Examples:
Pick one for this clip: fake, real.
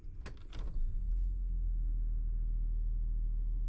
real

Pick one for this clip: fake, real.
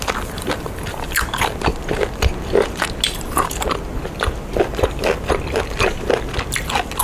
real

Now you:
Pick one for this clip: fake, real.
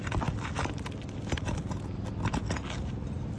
real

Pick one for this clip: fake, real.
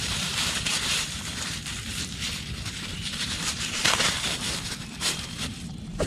fake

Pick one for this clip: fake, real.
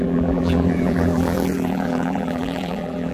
fake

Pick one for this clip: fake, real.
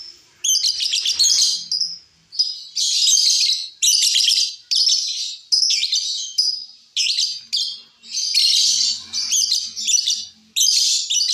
real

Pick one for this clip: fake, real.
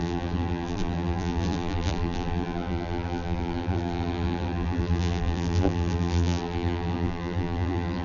fake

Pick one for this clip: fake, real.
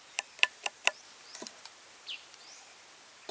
fake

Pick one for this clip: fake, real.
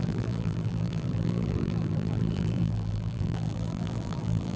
fake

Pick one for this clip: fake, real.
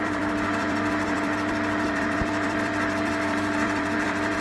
fake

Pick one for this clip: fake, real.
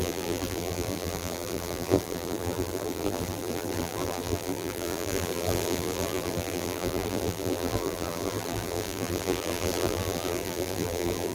fake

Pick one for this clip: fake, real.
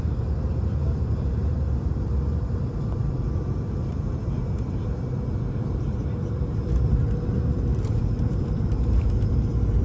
fake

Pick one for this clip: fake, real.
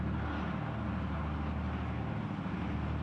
real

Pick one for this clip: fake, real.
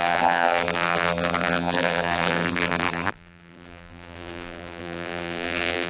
fake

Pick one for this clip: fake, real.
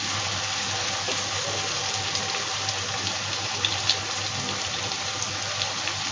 fake